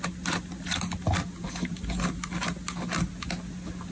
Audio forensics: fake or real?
real